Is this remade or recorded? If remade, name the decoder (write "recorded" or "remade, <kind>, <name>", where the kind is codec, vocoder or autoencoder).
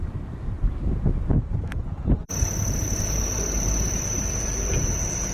remade, vocoder, BigVGAN v2